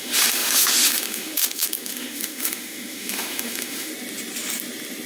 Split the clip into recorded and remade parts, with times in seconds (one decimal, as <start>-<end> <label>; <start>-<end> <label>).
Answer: 0.0-3.9 remade; 3.9-5.1 recorded